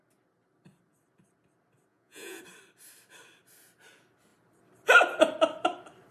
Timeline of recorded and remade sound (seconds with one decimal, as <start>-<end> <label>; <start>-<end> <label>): 0.0-1.9 recorded; 1.9-2.4 remade; 2.4-6.1 recorded